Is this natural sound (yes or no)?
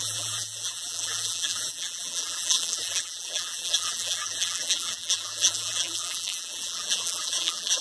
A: no